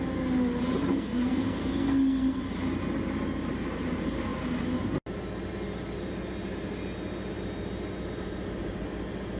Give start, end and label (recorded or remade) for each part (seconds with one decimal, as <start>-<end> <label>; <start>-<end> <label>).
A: 0.0-0.9 recorded; 0.9-2.4 remade; 2.4-9.4 recorded